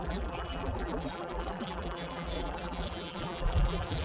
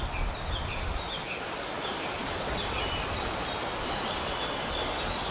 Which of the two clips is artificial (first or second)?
first